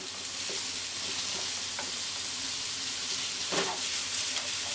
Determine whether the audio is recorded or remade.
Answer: recorded